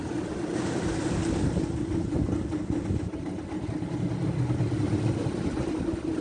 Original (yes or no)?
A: yes